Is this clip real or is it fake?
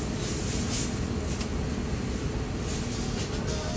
real